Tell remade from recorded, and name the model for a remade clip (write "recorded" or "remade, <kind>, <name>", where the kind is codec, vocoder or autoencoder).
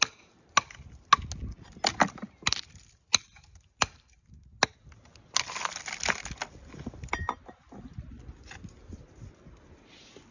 recorded